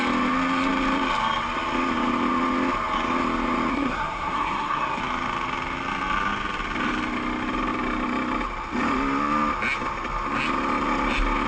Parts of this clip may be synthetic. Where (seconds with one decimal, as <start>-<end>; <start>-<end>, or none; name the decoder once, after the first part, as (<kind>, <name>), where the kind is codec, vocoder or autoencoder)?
3.7-5.0 (codec, SNAC)